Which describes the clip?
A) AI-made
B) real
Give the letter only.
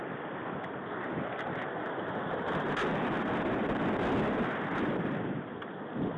B